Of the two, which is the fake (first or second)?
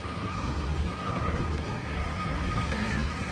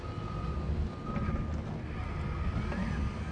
first